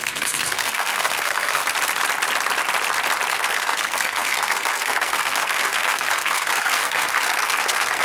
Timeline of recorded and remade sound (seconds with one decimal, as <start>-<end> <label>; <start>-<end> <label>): 0.0-1.6 remade; 1.6-3.3 recorded; 3.3-8.0 remade